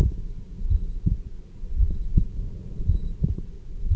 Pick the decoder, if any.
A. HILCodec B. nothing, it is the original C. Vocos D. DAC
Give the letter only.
C